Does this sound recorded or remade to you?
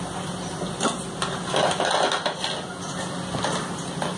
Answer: recorded